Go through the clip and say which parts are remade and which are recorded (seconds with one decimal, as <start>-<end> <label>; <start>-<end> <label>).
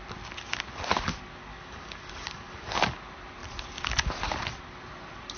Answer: 0.0-1.5 recorded; 1.5-2.8 remade; 2.8-5.4 recorded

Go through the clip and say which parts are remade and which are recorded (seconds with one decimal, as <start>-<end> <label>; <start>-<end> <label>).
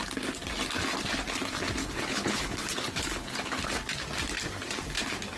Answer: 0.0-1.8 recorded; 1.8-3.6 remade; 3.6-5.4 recorded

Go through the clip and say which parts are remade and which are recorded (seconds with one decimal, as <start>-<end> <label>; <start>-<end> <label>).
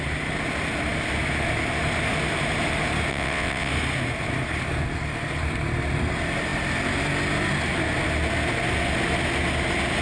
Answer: 0.0-3.1 recorded; 3.1-3.7 remade; 3.7-10.0 recorded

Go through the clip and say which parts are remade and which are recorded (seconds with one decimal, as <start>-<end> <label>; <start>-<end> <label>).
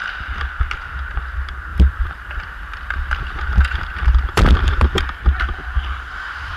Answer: 0.0-1.7 recorded; 1.7-5.2 remade; 5.2-6.6 recorded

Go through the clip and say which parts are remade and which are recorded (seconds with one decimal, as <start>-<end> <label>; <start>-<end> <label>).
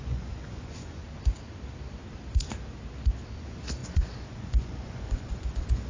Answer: 0.0-1.0 remade; 1.0-3.4 recorded; 3.4-5.9 remade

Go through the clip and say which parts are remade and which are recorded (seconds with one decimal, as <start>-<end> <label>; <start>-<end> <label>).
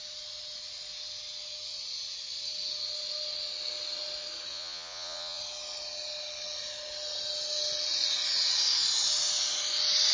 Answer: 0.0-4.5 recorded; 4.5-5.4 remade; 5.4-10.1 recorded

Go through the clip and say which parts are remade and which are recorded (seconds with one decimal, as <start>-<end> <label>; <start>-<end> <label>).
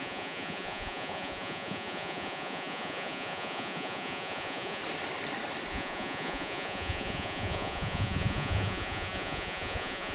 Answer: 0.0-4.8 remade; 4.8-5.7 recorded; 5.7-10.1 remade